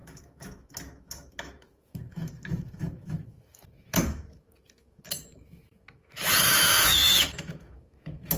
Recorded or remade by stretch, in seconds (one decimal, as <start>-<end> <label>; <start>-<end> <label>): 0.0-8.4 remade